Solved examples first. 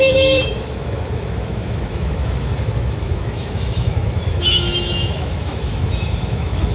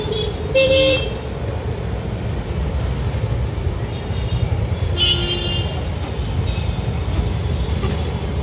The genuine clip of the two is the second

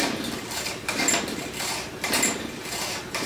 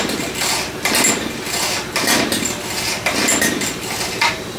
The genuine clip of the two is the second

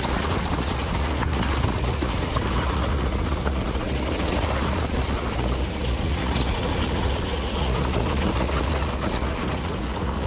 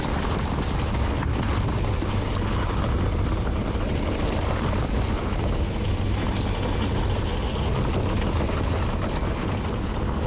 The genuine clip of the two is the second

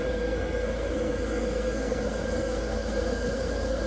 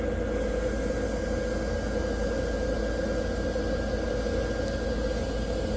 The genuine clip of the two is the second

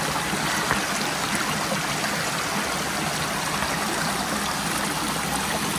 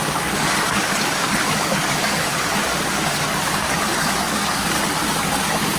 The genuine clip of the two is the first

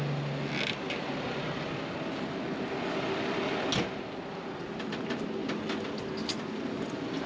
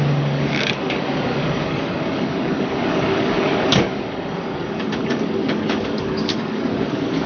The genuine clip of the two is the first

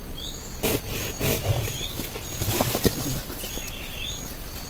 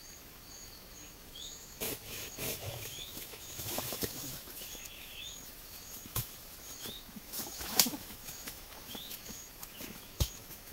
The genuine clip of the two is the first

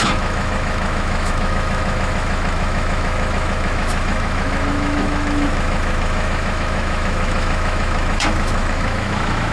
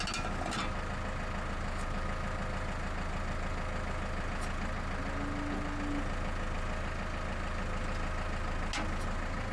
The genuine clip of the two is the second